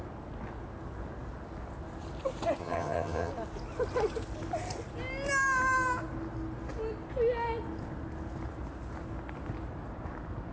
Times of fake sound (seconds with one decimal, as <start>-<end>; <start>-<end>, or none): 2.6-3.3